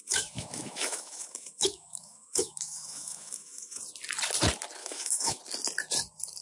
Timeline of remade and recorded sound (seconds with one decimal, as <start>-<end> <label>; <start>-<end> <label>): 0.0-3.8 remade; 3.8-4.8 recorded; 4.8-5.4 remade; 5.4-6.4 recorded